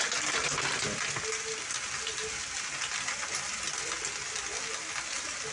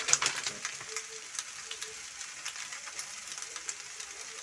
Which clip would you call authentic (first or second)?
first